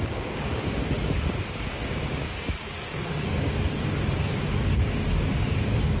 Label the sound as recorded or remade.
remade